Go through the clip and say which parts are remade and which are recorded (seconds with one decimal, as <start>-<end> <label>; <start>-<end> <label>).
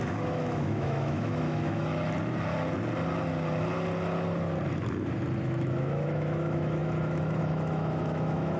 0.0-1.9 remade; 1.9-5.4 recorded; 5.4-8.6 remade